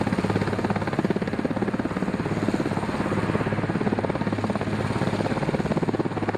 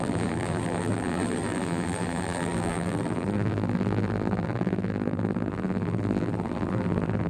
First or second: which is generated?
second